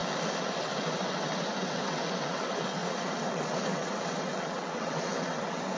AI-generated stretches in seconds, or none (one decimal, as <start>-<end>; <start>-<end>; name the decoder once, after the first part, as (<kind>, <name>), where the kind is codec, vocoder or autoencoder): 0.6-5.8 (vocoder, WaveNeXt)